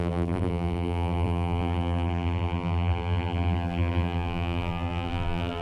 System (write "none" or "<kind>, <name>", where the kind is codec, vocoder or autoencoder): vocoder, BigVGAN v2